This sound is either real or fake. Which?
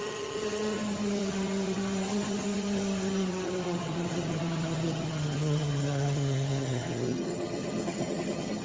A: fake